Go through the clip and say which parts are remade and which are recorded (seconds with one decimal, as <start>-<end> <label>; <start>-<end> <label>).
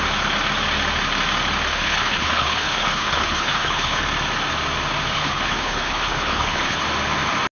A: 0.0-1.7 recorded; 1.7-4.0 remade; 4.0-5.1 recorded; 5.1-6.8 remade; 6.8-7.6 recorded